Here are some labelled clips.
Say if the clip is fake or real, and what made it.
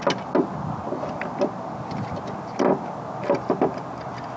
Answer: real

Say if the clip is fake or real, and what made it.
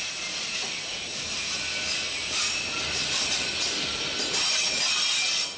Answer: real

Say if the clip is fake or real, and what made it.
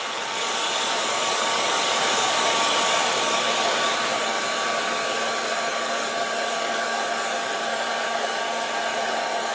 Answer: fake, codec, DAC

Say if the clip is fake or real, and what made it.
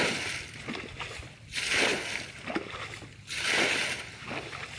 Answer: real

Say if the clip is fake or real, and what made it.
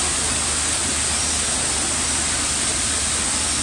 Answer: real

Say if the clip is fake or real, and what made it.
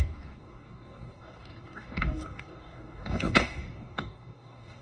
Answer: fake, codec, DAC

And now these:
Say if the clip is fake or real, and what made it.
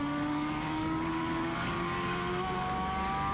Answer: fake, codec, DAC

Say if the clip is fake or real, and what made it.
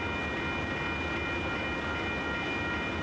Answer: real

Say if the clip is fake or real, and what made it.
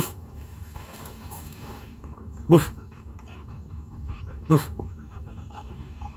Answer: fake, codec, DAC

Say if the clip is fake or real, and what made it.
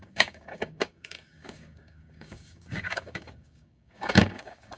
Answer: fake, codec, DAC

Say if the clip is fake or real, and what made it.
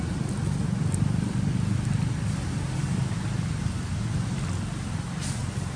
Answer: real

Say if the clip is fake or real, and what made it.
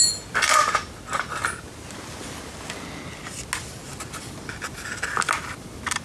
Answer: real